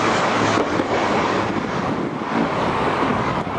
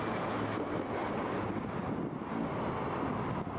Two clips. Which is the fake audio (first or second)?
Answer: first